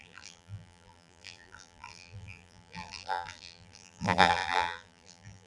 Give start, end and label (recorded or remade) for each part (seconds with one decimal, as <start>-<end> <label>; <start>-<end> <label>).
0.0-5.5 remade